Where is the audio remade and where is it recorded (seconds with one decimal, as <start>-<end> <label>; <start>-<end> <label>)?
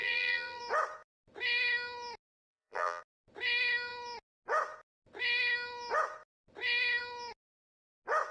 0.0-0.6 remade; 0.6-2.3 recorded; 2.3-3.0 remade; 3.0-8.3 recorded